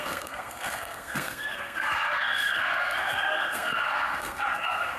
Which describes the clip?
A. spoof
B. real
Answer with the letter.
A